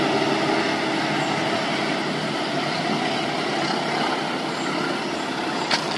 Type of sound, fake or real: real